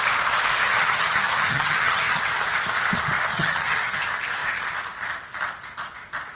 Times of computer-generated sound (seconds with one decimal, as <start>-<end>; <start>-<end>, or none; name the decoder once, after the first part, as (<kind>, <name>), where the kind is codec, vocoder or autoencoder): 0.6-2.2 (vocoder, HiFi-GAN); 3.3-4.0

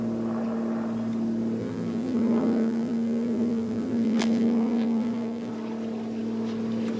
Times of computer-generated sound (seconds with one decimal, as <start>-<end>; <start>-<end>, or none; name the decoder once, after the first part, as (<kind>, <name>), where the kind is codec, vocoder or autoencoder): 1.6-5.5 (vocoder, BigVGAN v2)

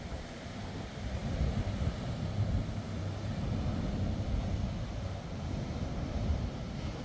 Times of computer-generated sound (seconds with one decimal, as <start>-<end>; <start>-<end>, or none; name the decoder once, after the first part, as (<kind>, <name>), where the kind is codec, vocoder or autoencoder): 0.0-1.2 (vocoder, BigVGAN v2); 4.9-7.0

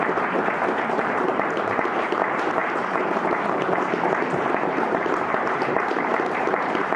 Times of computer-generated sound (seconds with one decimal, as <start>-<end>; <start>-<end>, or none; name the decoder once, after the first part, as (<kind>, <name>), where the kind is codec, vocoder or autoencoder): 0.0-7.0 (vocoder, BigVGAN v2)

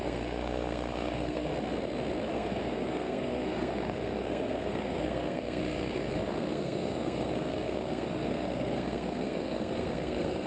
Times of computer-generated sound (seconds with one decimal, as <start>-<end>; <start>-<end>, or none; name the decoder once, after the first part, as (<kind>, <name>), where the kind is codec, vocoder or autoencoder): 0.0-1.5 (codec, SNAC); 2.3-10.5

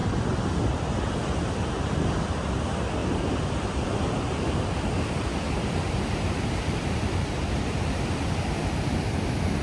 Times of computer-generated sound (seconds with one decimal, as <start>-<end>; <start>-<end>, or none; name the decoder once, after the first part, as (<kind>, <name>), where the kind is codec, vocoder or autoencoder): 3.0-4.1 (vocoder, BigVGAN v2); 5.3-8.9